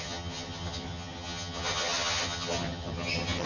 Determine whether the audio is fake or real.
fake